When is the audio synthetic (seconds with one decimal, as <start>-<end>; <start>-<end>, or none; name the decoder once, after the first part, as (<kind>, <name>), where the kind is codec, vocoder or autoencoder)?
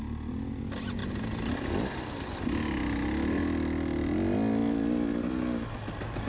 none